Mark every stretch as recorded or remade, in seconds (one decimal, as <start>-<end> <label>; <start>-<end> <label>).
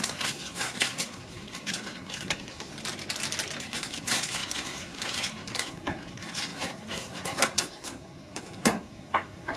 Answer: 0.0-2.7 remade; 2.7-3.6 recorded; 3.6-9.6 remade